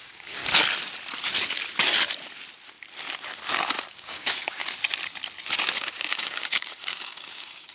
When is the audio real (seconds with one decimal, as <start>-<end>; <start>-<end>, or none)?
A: 0.4-3.9; 4.6-5.8